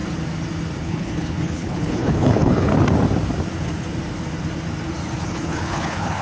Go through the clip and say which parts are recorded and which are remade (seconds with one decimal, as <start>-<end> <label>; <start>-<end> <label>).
0.0-0.8 recorded; 0.8-2.7 remade; 2.7-5.2 recorded; 5.2-6.2 remade